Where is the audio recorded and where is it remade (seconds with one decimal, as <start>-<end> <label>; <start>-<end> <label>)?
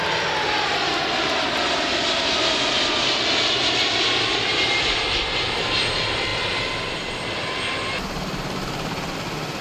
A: 0.0-9.6 recorded